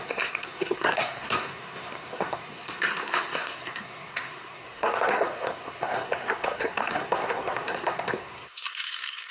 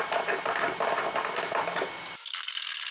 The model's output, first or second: first